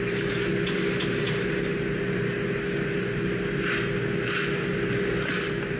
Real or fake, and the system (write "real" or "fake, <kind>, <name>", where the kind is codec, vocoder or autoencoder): real